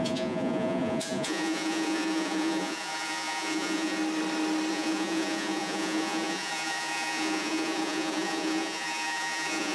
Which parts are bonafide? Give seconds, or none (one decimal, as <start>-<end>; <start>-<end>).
4.0-4.7